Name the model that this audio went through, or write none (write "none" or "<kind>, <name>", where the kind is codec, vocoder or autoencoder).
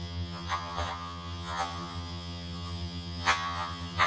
vocoder, HiFi-GAN